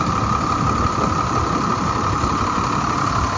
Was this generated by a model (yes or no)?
no